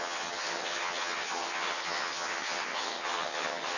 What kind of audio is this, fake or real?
fake